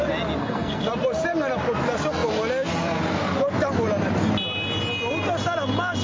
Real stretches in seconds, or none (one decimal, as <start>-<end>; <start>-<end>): 0.0-0.4; 0.9-6.0